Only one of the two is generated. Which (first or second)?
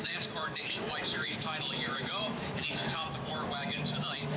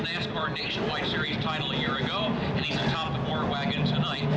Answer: first